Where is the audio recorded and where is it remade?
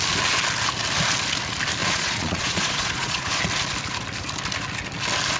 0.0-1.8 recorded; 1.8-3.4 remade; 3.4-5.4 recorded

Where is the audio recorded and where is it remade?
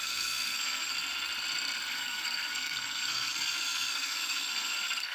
0.0-0.9 remade; 0.9-1.9 recorded; 1.9-5.1 remade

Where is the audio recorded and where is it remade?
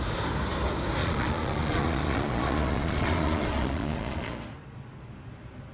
0.0-1.0 recorded; 1.0-4.4 remade; 4.4-5.7 recorded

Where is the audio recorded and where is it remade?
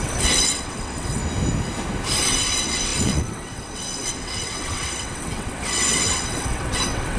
0.0-1.2 remade; 1.2-2.2 recorded; 2.2-7.2 remade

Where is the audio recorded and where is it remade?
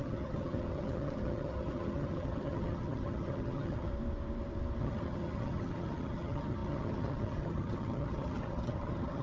0.0-3.9 remade; 3.9-4.8 recorded; 4.8-9.2 remade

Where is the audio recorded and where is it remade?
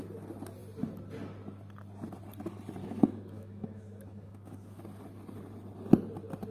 0.0-2.8 recorded; 2.8-4.8 remade; 4.8-6.5 recorded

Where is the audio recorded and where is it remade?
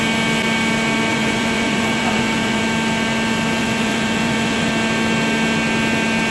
0.0-1.1 recorded; 1.1-2.6 remade; 2.6-3.6 recorded; 3.6-4.7 remade; 4.7-6.3 recorded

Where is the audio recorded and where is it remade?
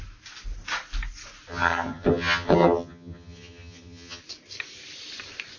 0.0-1.5 recorded; 1.5-4.2 remade; 4.2-5.6 recorded